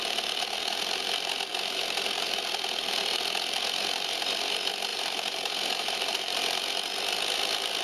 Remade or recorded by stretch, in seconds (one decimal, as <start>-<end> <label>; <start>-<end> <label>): 0.0-1.5 recorded; 1.5-2.4 remade; 2.4-4.9 recorded; 4.9-6.4 remade; 6.4-7.8 recorded